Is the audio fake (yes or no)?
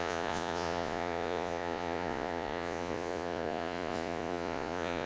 yes